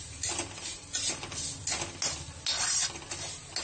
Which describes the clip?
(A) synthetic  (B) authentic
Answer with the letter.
B